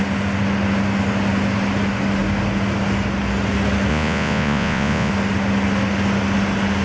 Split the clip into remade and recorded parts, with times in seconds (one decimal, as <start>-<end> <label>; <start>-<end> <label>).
0.0-3.9 recorded; 3.9-5.1 remade; 5.1-6.8 recorded